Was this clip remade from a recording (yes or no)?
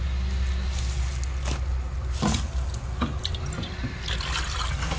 no